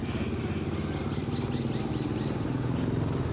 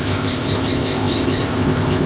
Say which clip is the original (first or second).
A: first